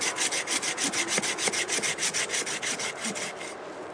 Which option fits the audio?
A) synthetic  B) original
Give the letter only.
B